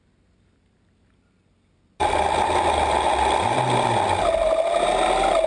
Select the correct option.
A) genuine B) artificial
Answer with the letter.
A